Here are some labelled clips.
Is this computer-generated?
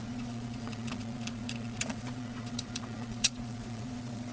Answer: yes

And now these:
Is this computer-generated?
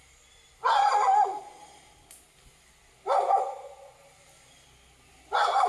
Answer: no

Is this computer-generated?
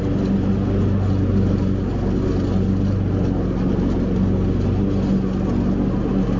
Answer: no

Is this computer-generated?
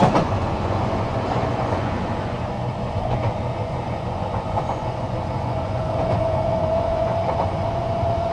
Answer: yes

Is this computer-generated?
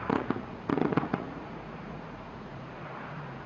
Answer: yes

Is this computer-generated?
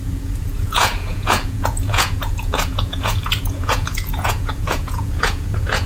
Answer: yes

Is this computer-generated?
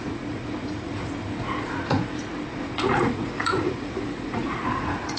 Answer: yes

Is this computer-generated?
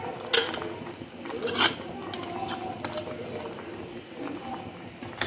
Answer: no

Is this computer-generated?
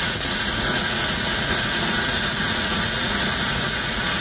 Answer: yes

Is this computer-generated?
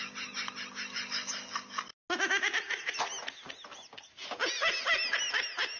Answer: no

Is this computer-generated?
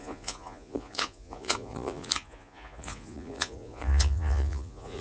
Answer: yes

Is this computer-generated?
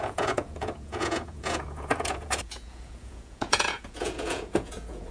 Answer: yes